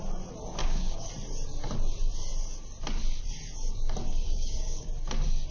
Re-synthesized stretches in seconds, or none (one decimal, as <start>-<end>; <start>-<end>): 0.6-1.1; 4.0-4.9